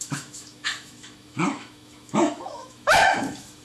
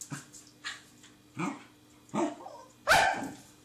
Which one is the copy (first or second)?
first